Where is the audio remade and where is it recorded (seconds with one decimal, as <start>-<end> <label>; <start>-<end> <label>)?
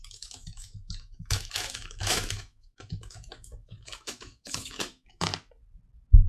0.0-5.3 remade; 5.3-6.3 recorded